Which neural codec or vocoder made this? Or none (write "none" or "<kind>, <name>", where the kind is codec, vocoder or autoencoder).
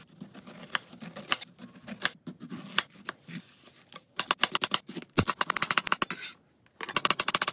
none